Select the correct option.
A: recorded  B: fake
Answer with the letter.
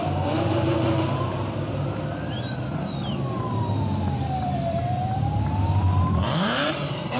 B